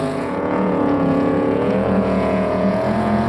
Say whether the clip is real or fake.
fake